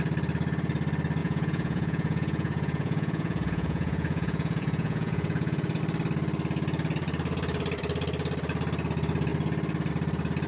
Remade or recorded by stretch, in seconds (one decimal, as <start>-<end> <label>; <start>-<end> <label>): 0.0-1.2 recorded; 1.2-5.8 remade; 5.8-10.5 recorded